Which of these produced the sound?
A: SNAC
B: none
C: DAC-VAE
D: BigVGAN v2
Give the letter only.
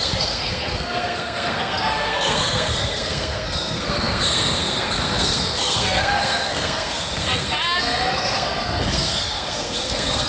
A